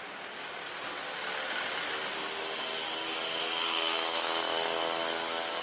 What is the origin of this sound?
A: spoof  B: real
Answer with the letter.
B